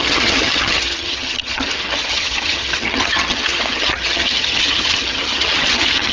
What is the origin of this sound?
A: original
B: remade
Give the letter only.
B